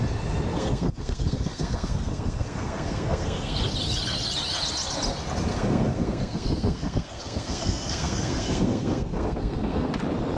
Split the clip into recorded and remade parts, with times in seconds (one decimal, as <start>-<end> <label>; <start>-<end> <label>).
0.0-0.5 recorded; 0.5-3.6 remade; 3.6-5.5 recorded; 5.5-9.9 remade; 9.9-10.4 recorded